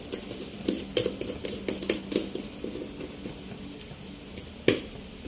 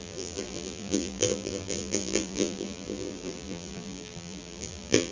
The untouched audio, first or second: first